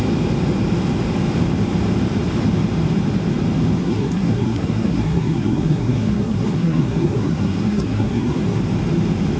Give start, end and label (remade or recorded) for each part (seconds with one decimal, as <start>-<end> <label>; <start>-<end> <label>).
0.0-3.8 recorded; 3.8-8.6 remade; 8.6-9.4 recorded